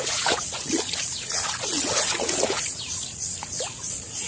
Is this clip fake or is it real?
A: fake